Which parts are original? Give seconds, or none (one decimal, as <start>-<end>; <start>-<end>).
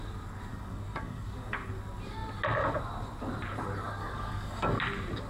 0.0-0.5; 1.7-4.0; 4.8-5.3